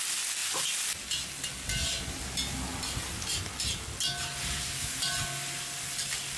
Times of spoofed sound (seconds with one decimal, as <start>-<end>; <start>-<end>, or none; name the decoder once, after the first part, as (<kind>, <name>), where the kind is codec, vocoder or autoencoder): none